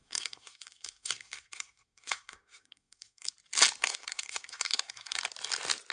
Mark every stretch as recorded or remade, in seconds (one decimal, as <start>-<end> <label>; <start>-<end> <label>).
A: 0.0-3.3 remade; 3.3-3.8 recorded; 3.8-5.2 remade; 5.2-5.9 recorded